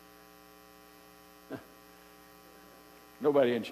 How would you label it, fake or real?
real